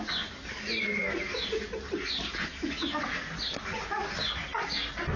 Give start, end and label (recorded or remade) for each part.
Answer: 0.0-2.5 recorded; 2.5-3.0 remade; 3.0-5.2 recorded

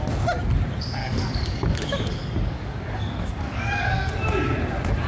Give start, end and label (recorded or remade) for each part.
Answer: 0.0-1.0 recorded; 1.0-4.1 remade; 4.1-5.1 recorded